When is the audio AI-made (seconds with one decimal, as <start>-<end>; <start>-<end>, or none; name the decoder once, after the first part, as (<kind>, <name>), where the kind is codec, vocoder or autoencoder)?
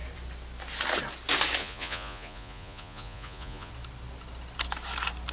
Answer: 1.6-3.7 (vocoder, Vocos)